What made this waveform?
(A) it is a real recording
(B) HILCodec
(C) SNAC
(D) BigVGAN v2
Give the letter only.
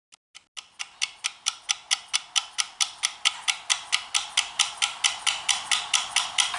A